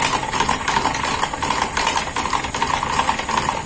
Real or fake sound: real